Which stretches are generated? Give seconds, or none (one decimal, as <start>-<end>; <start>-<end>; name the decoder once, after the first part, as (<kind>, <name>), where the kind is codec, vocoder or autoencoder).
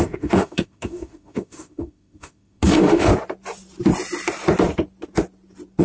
0.0-3.1 (autoencoder, DAC-VAE)